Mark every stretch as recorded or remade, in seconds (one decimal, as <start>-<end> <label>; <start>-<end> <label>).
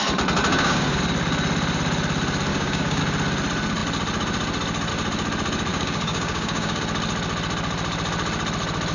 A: 0.0-0.5 recorded; 0.5-1.0 remade; 1.0-2.5 recorded; 2.5-3.0 remade; 3.0-5.7 recorded; 5.7-6.8 remade; 6.8-8.9 recorded